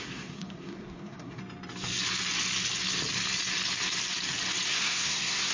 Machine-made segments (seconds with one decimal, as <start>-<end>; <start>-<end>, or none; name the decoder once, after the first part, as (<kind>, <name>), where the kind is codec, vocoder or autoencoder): 0.0-1.4 (codec, SNAC); 4.7-5.5